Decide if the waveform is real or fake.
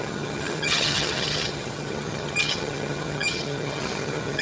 fake